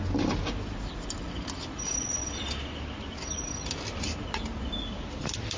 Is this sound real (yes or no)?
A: yes